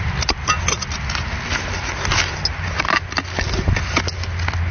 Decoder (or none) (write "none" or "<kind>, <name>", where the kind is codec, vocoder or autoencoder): none